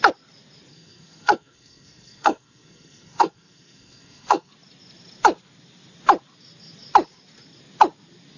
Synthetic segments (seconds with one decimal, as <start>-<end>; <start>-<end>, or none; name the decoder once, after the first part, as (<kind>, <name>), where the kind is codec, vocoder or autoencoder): 0.7-4.5 (codec, SNAC)